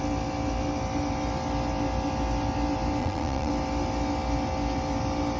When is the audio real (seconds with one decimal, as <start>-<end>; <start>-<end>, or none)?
0.0-3.0; 3.5-5.4